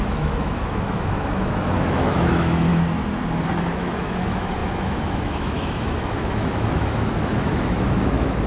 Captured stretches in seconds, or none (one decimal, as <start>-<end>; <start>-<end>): 2.7-3.6